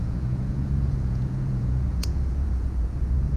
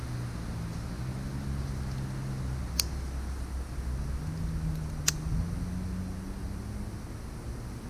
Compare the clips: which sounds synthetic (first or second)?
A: first